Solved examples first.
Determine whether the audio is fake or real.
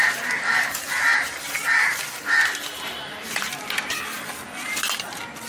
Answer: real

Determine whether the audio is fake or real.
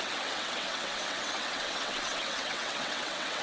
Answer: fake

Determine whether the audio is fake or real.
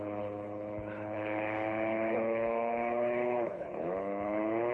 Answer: fake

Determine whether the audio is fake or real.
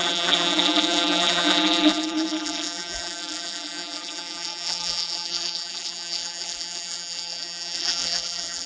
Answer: fake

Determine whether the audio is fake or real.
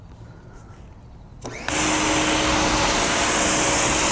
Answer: real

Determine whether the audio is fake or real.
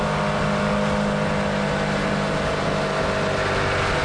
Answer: real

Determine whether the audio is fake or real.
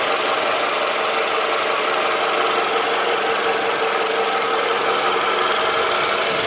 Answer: real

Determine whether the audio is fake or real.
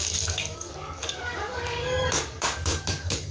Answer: fake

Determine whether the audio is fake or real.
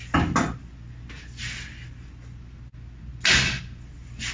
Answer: real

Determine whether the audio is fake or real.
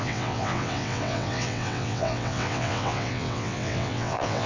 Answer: fake